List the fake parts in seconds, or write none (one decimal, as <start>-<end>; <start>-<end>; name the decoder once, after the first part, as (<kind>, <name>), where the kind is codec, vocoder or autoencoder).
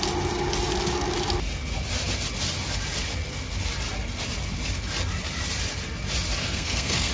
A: 6.4-7.1 (codec, SNAC)